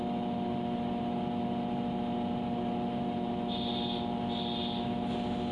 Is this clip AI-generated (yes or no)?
no